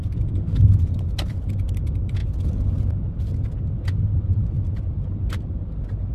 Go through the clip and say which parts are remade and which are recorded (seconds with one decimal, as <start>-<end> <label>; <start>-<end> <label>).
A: 0.0-6.1 recorded